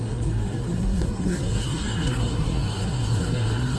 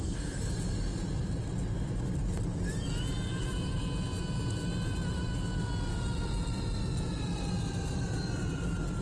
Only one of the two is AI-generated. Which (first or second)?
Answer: first